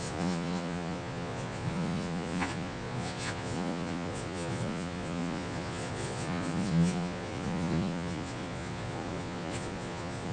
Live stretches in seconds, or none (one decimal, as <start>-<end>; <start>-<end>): none